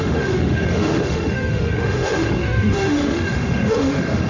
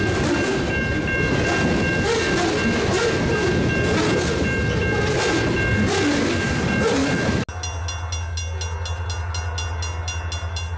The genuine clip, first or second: second